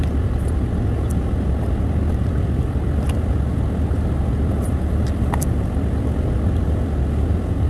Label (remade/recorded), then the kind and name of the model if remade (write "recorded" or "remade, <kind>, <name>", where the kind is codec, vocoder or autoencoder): recorded